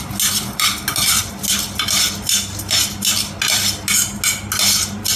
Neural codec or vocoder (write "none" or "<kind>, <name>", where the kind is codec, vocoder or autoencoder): none